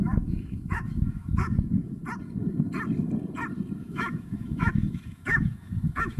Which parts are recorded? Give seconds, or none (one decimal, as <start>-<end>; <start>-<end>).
2.0-3.8